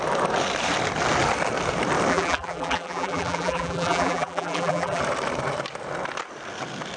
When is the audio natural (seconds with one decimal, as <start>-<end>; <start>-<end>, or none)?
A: 0.0-2.1; 5.0-7.0